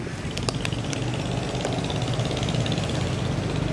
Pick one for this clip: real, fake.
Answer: real